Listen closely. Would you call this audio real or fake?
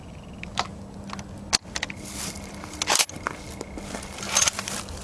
real